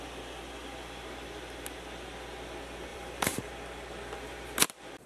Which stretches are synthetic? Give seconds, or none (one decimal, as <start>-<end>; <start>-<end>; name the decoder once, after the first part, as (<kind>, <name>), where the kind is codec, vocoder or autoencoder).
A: 2.9-3.5 (vocoder, BigVGAN v2)

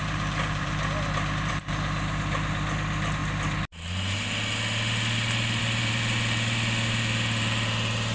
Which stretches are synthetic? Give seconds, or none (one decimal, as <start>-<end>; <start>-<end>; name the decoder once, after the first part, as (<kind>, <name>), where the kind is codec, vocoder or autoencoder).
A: 0.0-3.2 (vocoder, BigVGAN v2); 5.6-8.1

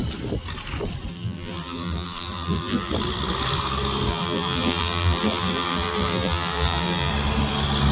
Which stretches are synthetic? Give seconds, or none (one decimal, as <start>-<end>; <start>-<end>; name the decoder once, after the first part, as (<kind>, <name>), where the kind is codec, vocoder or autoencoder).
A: 1.1-2.9 (vocoder, BigVGAN v2); 4.1-7.1

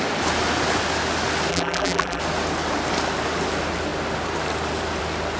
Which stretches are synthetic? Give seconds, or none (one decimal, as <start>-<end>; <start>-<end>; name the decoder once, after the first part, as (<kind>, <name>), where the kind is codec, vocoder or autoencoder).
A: 1.5-2.2 (vocoder, BigVGAN v2)

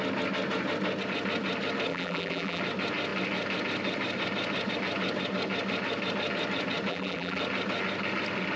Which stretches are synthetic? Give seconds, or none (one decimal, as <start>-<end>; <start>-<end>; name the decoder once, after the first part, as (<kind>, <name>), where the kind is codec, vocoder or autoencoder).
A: 1.9-2.6 (vocoder, BigVGAN v2); 6.9-7.4

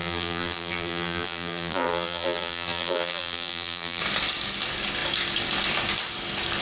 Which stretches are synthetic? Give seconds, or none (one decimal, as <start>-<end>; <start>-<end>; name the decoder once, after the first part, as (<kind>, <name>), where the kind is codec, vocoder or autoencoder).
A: 0.0-4.0 (vocoder, BigVGAN v2)

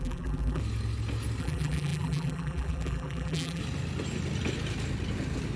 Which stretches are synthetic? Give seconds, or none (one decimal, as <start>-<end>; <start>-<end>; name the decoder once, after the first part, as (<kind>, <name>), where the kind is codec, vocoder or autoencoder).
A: 0.0-0.6 (vocoder, BigVGAN v2); 1.4-3.6